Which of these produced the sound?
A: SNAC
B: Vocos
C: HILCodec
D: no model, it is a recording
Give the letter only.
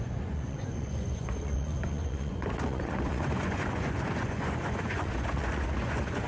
B